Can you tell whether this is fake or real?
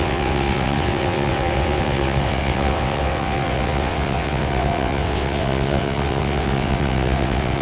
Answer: fake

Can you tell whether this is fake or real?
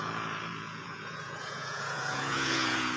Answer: fake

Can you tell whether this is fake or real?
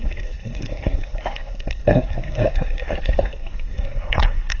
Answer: fake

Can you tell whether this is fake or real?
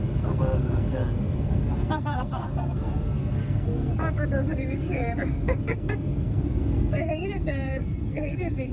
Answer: fake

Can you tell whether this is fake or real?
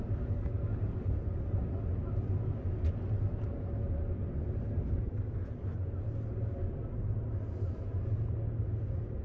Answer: real